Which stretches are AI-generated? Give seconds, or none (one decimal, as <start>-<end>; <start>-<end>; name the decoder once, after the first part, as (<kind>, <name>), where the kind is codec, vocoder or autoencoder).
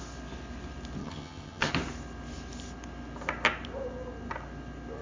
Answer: 1.0-1.7 (vocoder, HiFi-GAN)